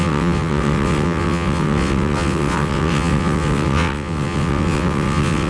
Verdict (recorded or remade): remade